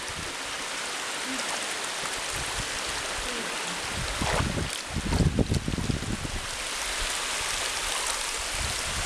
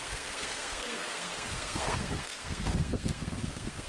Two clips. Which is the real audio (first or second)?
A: first